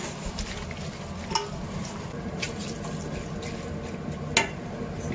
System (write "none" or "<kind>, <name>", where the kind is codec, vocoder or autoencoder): none